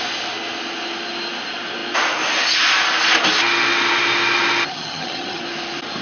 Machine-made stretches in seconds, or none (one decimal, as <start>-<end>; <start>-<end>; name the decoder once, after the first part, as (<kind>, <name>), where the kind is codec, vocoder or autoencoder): 4.7-5.4 (vocoder, HiFi-GAN)